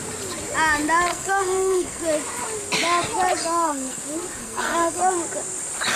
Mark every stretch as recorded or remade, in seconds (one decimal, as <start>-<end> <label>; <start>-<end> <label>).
0.0-1.1 recorded; 1.1-2.0 remade; 2.0-3.4 recorded; 3.4-4.0 remade; 4.0-4.4 recorded; 4.4-5.0 remade; 5.0-6.0 recorded